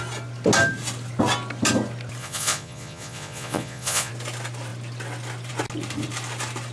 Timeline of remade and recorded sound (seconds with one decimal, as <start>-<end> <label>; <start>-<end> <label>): 0.0-2.2 recorded; 2.2-4.1 remade; 4.1-6.7 recorded